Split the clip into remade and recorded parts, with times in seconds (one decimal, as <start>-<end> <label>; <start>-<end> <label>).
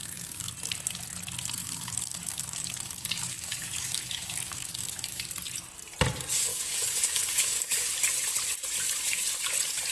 0.0-0.5 remade; 0.5-1.6 recorded; 1.6-5.3 remade; 5.3-6.5 recorded; 6.5-7.9 remade; 7.9-9.9 recorded